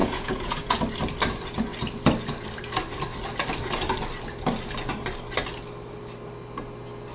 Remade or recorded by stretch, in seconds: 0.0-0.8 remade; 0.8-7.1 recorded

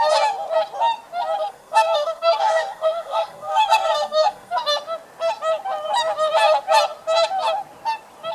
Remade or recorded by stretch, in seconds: 0.0-1.4 recorded; 1.4-4.6 remade; 4.6-8.3 recorded